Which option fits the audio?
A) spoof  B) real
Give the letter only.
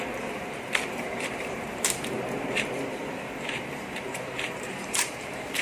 A